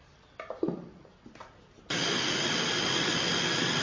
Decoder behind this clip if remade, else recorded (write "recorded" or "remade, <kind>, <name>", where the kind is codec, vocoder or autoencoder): recorded